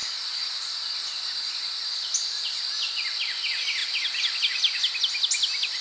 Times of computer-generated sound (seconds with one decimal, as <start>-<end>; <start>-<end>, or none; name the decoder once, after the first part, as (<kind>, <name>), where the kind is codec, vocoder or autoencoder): none